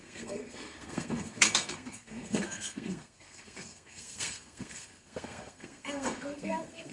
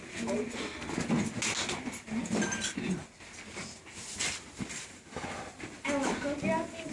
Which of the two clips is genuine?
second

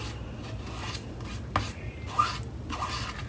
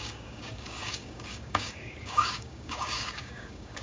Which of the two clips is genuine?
first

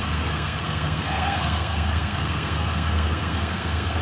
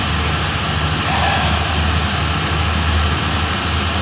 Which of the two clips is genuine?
second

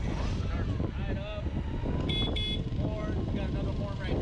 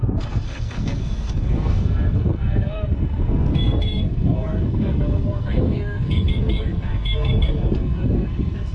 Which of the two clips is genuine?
first